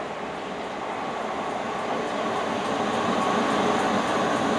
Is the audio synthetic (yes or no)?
no